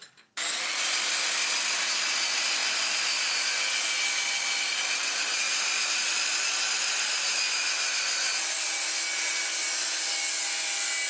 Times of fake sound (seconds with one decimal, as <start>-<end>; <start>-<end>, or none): none